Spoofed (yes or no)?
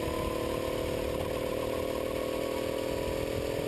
no